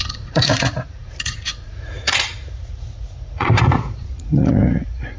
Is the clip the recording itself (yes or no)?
no